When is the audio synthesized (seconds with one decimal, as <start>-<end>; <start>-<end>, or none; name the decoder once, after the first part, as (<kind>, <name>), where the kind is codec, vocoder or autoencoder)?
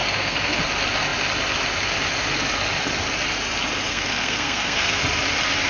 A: 0.0-0.6 (codec, SNAC); 3.9-5.0